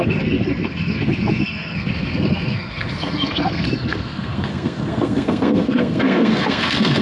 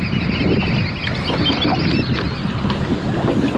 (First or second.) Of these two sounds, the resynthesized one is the first